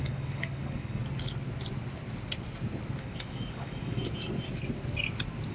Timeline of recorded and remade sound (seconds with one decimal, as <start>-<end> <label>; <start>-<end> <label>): 0.0-1.0 remade; 1.0-3.0 recorded; 3.0-4.0 remade; 4.0-5.5 recorded